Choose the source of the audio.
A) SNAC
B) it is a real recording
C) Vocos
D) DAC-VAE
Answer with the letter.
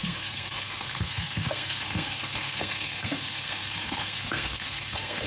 A